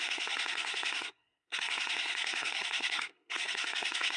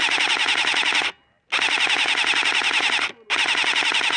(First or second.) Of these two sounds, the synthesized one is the first